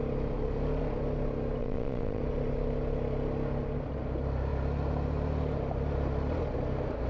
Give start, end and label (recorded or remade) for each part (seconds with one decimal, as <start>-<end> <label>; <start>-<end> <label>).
0.0-1.6 recorded; 1.6-2.2 remade; 2.2-7.1 recorded